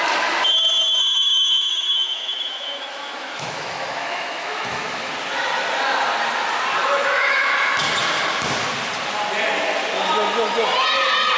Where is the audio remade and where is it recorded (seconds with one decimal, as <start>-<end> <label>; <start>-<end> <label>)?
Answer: 0.0-1.0 recorded; 1.0-5.1 remade; 5.1-6.8 recorded; 6.8-7.5 remade; 7.5-11.4 recorded